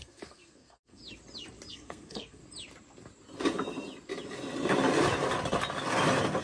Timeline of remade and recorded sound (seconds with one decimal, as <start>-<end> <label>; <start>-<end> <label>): 0.0-1.0 remade; 1.0-1.7 recorded; 1.7-2.4 remade; 2.4-6.4 recorded